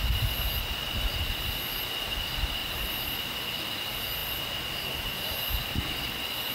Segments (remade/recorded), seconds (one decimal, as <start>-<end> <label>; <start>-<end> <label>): 0.0-6.5 recorded

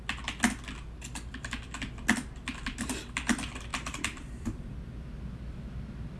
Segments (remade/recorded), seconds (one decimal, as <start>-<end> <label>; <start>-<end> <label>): 0.0-3.7 recorded; 3.7-5.8 remade; 5.8-6.2 recorded

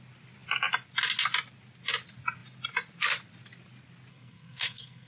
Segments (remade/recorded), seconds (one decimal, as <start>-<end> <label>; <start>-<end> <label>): 0.0-4.1 recorded; 4.1-5.1 remade

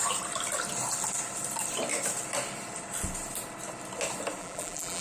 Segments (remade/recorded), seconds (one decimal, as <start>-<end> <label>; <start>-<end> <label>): 0.0-4.4 recorded; 4.4-5.0 remade

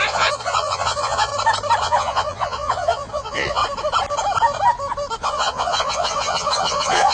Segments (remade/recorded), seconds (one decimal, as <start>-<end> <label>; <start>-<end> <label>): 0.0-1.3 remade; 1.3-1.8 recorded; 1.8-3.6 remade; 3.6-5.2 recorded; 5.2-7.1 remade

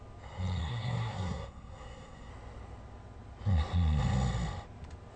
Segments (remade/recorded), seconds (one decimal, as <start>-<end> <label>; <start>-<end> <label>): 0.0-0.6 recorded; 0.6-2.3 remade; 2.3-5.2 recorded

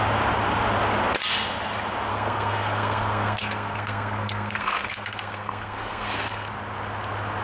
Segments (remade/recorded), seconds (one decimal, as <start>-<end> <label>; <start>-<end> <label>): 0.0-2.1 recorded; 2.1-6.5 remade; 6.5-7.4 recorded